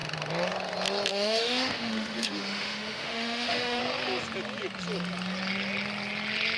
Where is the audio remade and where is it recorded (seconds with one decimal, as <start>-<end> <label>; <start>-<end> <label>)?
0.0-1.1 recorded; 1.1-3.8 remade; 3.8-6.6 recorded